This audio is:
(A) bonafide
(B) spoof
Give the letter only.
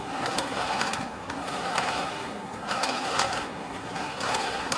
B